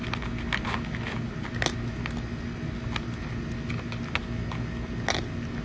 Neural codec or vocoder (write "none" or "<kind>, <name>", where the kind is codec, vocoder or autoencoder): none